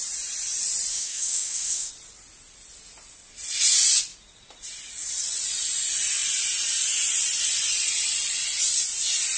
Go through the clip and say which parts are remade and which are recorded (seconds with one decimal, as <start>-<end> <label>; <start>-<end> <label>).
0.0-0.9 recorded; 0.9-1.9 remade; 1.9-9.4 recorded